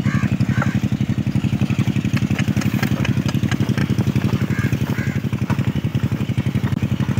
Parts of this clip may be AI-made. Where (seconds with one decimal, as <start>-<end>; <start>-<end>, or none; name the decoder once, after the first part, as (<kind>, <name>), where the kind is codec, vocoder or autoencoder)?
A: none